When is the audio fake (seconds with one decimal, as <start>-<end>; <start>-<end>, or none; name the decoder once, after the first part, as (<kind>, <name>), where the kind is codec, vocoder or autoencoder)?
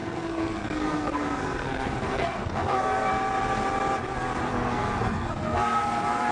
0.0-3.1 (codec, SNAC); 4.5-6.3